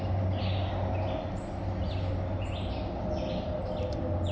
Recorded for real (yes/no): yes